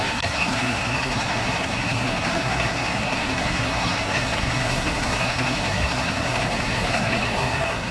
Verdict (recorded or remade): remade